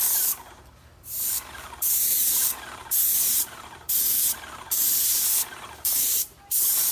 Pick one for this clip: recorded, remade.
remade